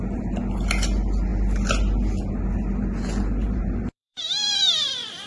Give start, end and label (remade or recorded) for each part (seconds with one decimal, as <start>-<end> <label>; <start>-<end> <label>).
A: 0.0-3.4 recorded; 3.4-5.3 remade

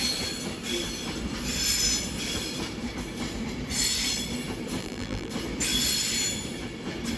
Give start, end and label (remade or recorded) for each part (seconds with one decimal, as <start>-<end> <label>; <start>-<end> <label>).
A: 0.0-4.8 recorded; 4.8-5.3 remade; 5.3-7.2 recorded

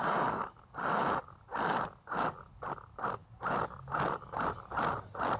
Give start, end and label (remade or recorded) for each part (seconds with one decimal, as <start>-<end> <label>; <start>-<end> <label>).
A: 0.0-5.4 recorded

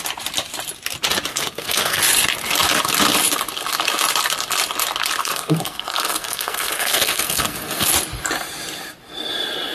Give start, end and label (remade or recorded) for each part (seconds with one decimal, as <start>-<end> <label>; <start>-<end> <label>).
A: 0.0-1.3 recorded; 1.3-2.0 remade; 2.0-5.2 recorded; 5.2-7.9 remade; 7.9-9.7 recorded

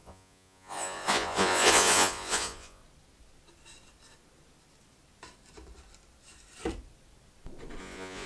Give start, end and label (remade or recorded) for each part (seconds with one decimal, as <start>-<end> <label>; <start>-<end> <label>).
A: 0.0-2.8 remade; 2.8-7.8 recorded; 7.8-8.3 remade

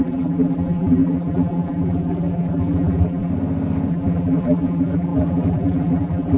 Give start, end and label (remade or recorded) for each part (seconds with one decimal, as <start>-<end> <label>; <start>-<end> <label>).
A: 0.0-3.3 remade; 3.3-3.9 recorded; 3.9-6.4 remade

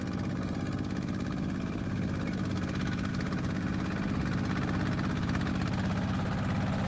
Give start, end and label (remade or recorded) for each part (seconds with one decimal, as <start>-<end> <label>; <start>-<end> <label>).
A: 0.0-6.9 recorded